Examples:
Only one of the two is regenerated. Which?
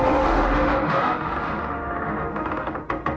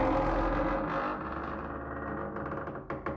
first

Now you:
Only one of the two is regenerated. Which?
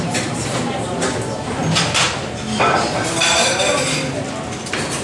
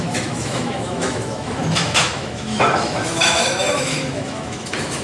second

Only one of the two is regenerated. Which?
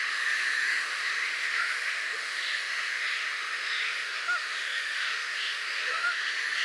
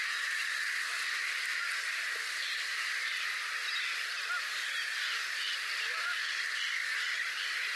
first